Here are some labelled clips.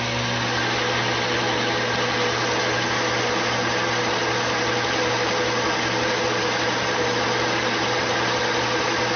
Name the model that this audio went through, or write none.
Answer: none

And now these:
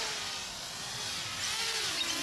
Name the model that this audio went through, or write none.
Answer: none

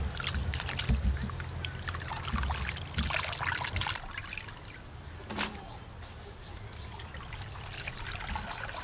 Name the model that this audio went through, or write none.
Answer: none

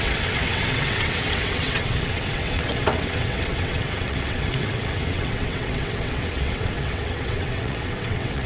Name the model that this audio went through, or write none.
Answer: vocoder, WaveNeXt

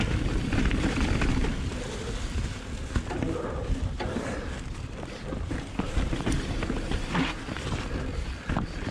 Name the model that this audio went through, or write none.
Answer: none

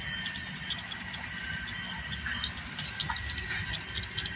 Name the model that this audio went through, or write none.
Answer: none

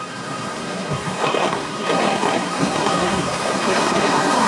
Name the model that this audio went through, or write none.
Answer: codec, SNAC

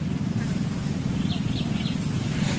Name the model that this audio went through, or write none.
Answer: none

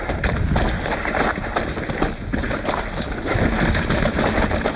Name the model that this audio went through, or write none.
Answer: none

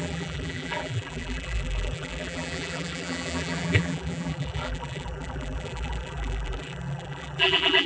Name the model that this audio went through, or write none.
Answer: vocoder, BigVGAN v2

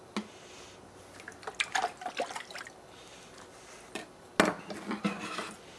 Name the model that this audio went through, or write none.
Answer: none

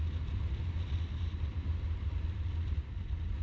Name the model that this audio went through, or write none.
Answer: none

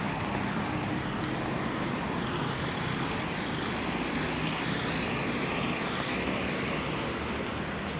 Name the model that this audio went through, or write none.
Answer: none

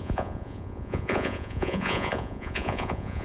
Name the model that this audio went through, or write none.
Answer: vocoder, Vocos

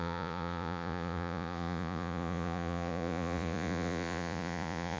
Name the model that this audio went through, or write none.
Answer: vocoder, Vocos